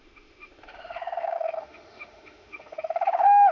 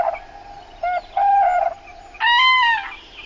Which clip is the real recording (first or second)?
second